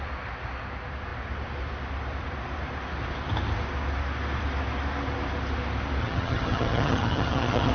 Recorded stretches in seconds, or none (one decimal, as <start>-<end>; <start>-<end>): 0.0-6.0